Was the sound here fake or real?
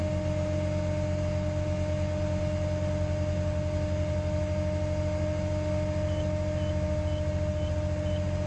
real